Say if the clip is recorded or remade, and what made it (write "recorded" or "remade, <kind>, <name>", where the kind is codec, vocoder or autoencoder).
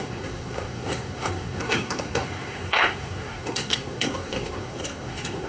remade, codec, SNAC